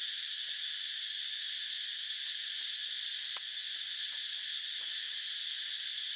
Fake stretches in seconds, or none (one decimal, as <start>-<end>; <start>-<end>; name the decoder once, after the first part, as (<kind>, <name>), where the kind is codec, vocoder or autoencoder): 0.0-0.9 (vocoder, BigVGAN v2)